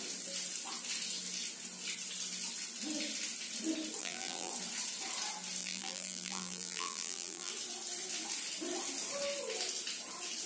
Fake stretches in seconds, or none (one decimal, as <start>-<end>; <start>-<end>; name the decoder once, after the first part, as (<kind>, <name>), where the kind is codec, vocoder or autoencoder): 4.0-4.5 (vocoder, BigVGAN v2); 5.6-7.5